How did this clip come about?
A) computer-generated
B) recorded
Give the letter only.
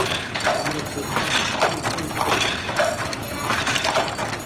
A